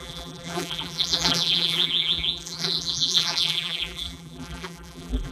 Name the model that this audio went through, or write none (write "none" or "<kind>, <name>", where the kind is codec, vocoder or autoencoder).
vocoder, BigVGAN v2